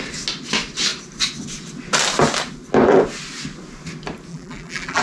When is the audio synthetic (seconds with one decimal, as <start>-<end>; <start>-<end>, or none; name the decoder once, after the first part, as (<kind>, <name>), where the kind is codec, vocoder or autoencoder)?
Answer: 4.3-5.0 (vocoder, BigVGAN v2)

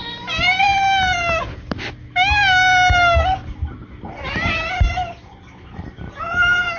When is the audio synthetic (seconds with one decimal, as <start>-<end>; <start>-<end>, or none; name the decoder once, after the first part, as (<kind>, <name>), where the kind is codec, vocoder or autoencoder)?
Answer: none

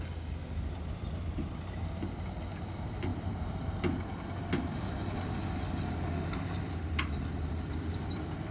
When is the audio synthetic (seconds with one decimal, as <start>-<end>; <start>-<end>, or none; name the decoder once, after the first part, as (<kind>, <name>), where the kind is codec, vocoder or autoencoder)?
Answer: 0.0-3.1 (vocoder, BigVGAN v2); 6.6-8.5

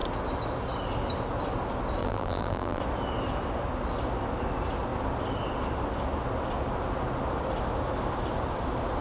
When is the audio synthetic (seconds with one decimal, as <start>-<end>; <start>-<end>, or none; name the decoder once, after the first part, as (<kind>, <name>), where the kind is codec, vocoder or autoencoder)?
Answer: 2.0-2.8 (vocoder, BigVGAN v2)

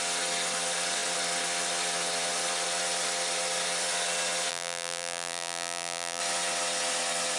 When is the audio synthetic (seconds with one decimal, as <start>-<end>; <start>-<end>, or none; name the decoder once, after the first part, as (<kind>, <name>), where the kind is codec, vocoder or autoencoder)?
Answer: 4.5-6.2 (vocoder, BigVGAN v2)

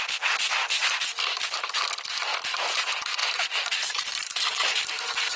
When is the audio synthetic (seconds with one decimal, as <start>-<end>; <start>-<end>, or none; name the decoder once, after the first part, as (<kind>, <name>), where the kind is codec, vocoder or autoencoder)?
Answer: 1.0-1.8 (vocoder, BigVGAN v2); 2.3-2.8; 3.2-5.4